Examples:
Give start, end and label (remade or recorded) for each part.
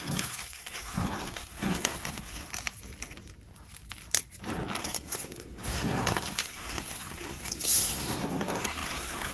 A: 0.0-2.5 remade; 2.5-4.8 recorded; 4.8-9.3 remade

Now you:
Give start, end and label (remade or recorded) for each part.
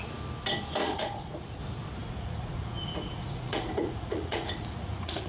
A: 0.0-0.8 recorded; 0.8-1.6 remade; 1.6-2.0 recorded; 2.0-5.3 remade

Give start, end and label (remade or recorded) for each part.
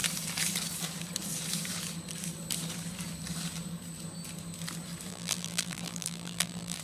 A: 0.0-5.1 recorded; 5.1-6.8 remade